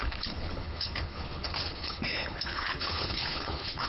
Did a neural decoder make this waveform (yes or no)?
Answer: yes